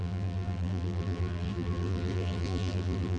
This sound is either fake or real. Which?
fake